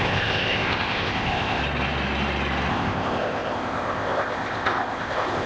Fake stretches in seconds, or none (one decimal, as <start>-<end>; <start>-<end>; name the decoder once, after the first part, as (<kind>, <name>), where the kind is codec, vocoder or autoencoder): 0.0-1.6 (codec, ZipCodec); 2.7-5.5